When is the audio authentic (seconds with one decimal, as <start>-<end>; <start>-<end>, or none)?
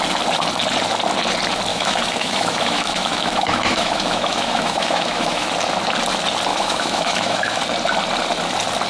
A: 0.0-1.7; 5.5-6.5; 7.6-8.9